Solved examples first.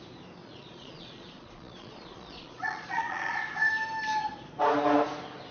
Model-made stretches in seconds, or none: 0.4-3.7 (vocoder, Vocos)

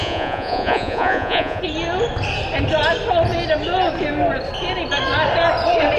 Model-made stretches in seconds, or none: 0.0-1.6 (vocoder, Vocos)

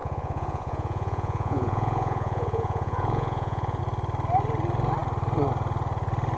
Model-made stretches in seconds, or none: 0.0-3.8 (vocoder, Vocos)

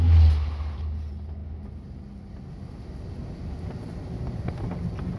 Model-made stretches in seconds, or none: none

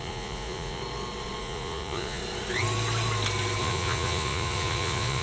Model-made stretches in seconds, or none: 0.0-0.8 (vocoder, Vocos); 1.4-2.2; 3.6-5.2